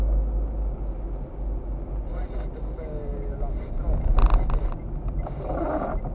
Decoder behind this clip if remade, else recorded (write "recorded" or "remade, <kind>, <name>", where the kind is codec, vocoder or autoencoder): recorded